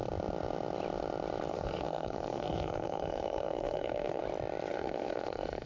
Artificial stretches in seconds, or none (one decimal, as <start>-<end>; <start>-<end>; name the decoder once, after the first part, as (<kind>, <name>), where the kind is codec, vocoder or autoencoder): 1.5-4.2 (codec, SNAC); 4.7-5.7